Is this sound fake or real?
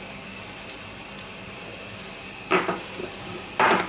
fake